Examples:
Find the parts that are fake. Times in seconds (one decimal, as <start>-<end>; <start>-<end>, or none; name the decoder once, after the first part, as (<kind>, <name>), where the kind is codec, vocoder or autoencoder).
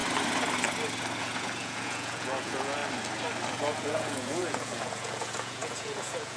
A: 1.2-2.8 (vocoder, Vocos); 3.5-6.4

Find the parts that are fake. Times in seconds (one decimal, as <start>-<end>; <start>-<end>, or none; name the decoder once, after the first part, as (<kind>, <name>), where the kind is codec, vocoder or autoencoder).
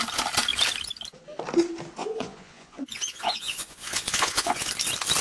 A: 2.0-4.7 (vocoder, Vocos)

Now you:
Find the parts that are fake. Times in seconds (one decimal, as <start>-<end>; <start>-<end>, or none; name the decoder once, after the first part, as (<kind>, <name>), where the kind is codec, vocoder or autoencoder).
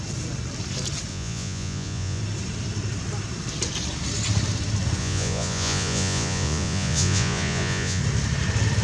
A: 1.1-2.2 (vocoder, Vocos); 5.0-8.0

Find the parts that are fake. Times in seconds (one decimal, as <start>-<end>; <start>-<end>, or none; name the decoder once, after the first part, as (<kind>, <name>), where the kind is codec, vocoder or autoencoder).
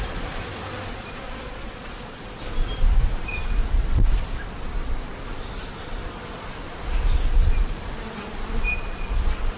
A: 0.9-2.4 (vocoder, Vocos)